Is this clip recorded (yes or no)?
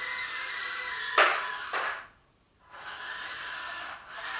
yes